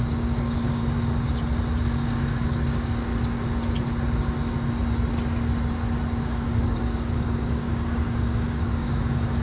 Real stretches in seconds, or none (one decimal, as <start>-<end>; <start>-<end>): 0.8-1.8; 3.1-6.2